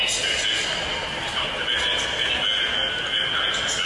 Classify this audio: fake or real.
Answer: real